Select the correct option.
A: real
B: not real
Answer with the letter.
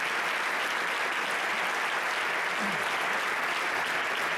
A